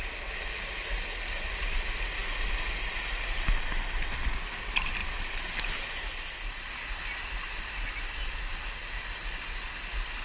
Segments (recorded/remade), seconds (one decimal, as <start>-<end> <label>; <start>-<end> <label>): 0.0-10.2 recorded